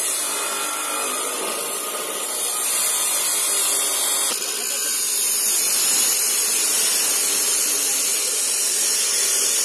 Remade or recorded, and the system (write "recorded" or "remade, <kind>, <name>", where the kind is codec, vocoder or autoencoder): recorded